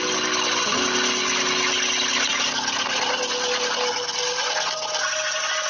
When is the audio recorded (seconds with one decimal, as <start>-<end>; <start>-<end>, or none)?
0.0-5.7